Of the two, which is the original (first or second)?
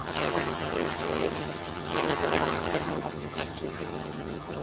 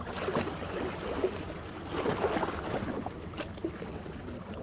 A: second